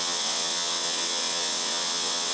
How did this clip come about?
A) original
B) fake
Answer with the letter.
B